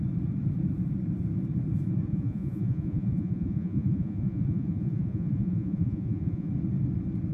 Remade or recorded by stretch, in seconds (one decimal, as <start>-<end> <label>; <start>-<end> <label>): 0.0-2.1 recorded; 2.1-6.5 remade; 6.5-7.3 recorded